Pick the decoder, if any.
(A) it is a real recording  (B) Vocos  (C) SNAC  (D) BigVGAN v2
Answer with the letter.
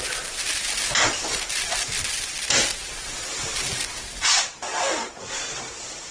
A